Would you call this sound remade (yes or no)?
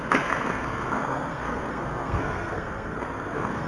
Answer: yes